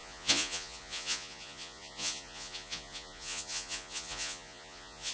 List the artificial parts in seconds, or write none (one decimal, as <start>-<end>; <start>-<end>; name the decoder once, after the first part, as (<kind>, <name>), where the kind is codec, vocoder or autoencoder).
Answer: 0.0-5.1 (vocoder, Vocos)